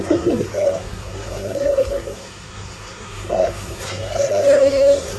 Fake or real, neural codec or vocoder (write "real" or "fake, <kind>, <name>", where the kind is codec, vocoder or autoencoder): fake, codec, SNAC